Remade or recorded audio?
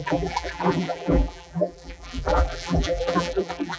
remade